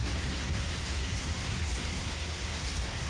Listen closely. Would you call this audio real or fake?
fake